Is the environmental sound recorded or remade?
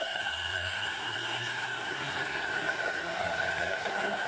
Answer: remade